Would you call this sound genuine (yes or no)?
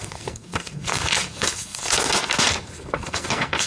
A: no